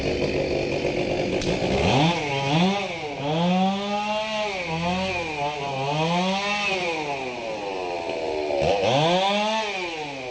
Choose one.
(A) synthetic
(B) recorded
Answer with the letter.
B